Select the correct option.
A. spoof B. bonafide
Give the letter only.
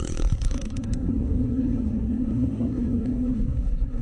A